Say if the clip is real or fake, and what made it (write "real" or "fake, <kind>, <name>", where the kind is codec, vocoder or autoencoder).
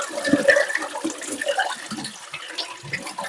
real